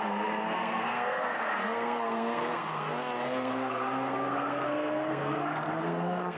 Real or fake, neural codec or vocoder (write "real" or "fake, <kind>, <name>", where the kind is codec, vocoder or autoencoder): fake, codec, SNAC